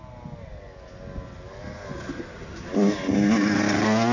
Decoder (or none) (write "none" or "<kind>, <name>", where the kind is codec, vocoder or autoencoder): none